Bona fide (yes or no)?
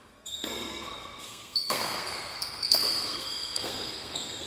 no